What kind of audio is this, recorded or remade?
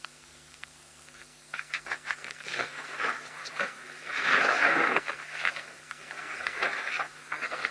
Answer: remade